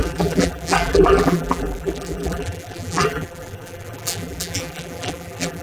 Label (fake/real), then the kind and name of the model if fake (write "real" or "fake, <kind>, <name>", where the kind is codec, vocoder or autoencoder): fake, vocoder, BigVGAN v2